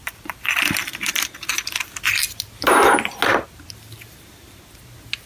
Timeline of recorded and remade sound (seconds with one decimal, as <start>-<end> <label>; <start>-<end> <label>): 0.0-1.5 remade; 1.5-5.3 recorded